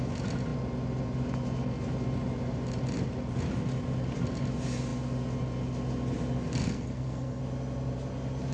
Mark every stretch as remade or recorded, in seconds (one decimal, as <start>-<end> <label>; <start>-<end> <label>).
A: 0.0-6.6 recorded; 6.6-7.4 remade; 7.4-8.5 recorded